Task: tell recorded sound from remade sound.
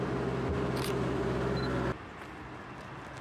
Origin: recorded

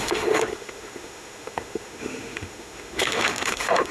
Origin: remade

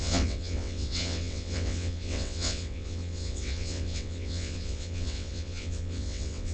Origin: remade